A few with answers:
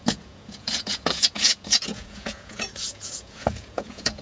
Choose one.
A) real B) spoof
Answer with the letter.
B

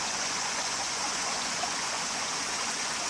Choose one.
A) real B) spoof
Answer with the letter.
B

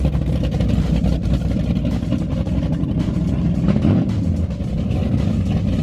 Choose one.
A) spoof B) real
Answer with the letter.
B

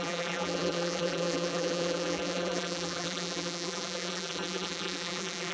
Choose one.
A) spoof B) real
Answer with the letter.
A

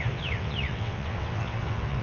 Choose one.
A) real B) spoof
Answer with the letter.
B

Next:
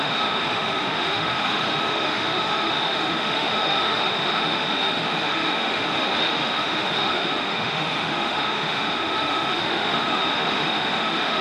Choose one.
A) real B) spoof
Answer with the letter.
B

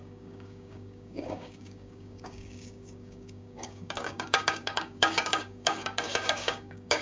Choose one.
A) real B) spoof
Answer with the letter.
B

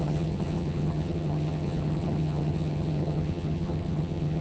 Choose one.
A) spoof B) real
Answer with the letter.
A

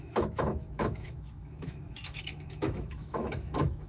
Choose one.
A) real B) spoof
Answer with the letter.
B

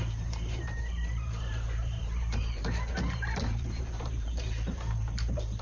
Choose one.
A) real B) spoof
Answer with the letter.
B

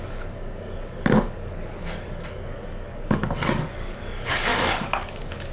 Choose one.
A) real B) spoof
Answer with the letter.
B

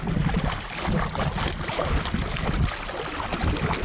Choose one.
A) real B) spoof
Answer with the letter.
A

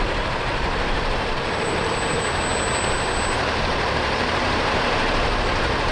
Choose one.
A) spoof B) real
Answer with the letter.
A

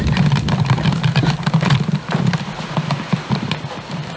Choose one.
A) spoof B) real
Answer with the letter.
A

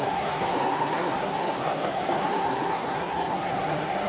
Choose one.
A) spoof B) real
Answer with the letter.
A